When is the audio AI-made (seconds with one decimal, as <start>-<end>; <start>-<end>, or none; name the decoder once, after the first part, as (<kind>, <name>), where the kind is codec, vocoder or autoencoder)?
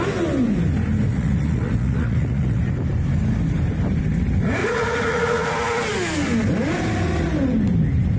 1.1-2.6 (vocoder, Vocos); 4.6-5.5